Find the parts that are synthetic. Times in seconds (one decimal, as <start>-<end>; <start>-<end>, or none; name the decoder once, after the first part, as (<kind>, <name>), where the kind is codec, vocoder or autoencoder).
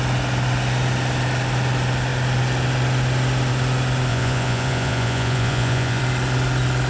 4.1-6.0 (vocoder, Vocos)